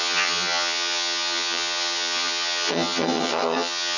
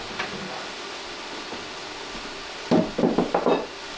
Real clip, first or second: second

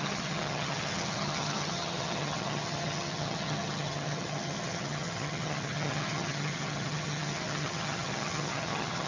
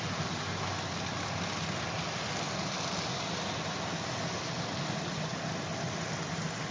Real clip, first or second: second